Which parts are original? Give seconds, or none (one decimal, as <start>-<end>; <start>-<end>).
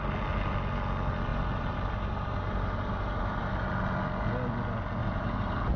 0.0-1.3; 3.7-5.0